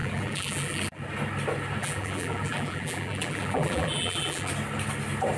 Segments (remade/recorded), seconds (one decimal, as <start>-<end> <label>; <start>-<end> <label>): 0.0-1.0 remade; 1.0-1.8 recorded; 1.8-4.5 remade; 4.5-5.4 recorded